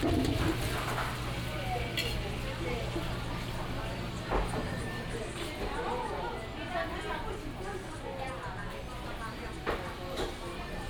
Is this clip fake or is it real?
real